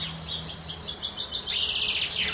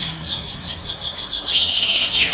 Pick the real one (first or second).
first